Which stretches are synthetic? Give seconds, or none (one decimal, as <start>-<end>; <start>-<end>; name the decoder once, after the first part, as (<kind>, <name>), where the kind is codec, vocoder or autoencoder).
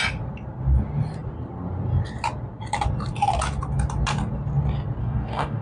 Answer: 5.0-5.6 (codec, DAC)